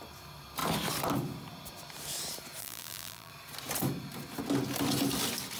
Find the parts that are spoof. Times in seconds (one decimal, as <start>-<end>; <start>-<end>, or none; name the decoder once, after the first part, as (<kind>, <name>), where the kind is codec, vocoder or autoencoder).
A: 2.6-3.3 (vocoder, BigVGAN v2)